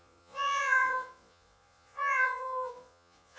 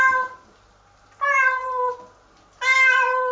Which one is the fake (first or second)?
first